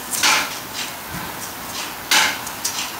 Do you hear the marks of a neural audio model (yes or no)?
no